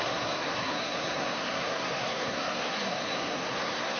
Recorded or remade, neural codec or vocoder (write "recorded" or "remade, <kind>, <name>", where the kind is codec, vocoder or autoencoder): remade, codec, SNAC